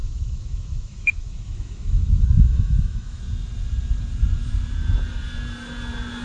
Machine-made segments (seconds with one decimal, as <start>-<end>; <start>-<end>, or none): 0.0-3.2